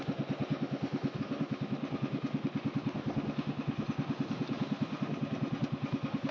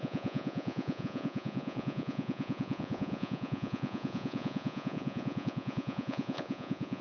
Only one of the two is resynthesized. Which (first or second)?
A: second